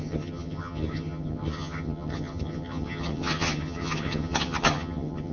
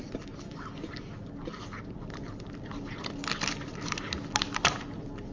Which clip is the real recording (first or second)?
second